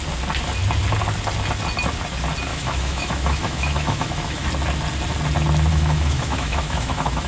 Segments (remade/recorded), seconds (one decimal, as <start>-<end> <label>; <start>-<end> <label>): 0.0-2.5 recorded; 2.5-4.5 remade; 4.5-5.7 recorded; 5.7-7.3 remade